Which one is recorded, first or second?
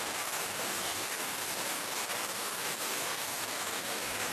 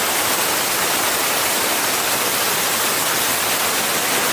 second